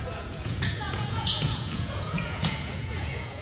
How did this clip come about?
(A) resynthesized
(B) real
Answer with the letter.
A